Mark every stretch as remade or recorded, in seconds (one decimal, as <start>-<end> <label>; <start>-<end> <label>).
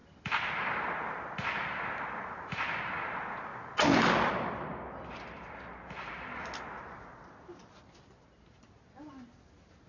0.0-9.9 recorded